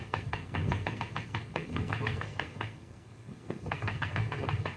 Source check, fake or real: fake